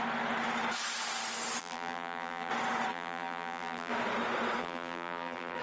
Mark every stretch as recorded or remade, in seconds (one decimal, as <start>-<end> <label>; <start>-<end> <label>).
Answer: 0.0-1.6 recorded; 1.6-2.5 remade; 2.5-2.9 recorded; 2.9-3.9 remade; 3.9-4.6 recorded; 4.6-5.6 remade